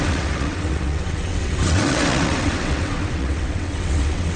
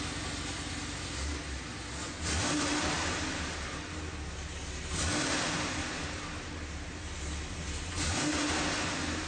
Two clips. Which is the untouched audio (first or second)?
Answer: second